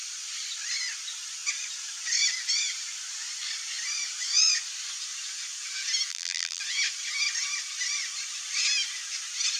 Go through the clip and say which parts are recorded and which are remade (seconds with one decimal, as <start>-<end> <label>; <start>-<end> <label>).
0.0-6.1 recorded; 6.1-6.6 remade; 6.6-9.6 recorded